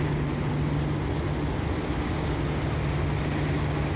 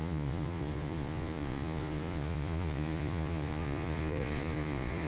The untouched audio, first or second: first